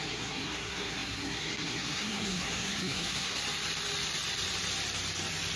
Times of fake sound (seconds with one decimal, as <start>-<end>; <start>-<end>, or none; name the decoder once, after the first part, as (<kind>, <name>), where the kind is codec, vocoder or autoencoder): 0.0-3.4 (codec, SNAC)